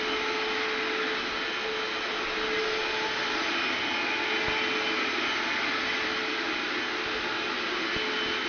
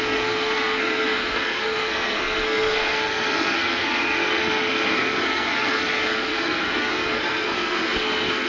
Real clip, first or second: first